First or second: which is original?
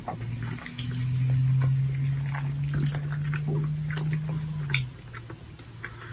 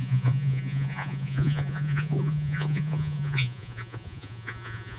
first